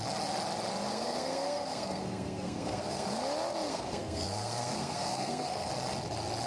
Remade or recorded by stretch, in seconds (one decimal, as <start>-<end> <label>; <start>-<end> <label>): 0.0-0.9 recorded; 0.9-3.2 remade; 3.2-3.7 recorded; 3.7-5.7 remade; 5.7-6.5 recorded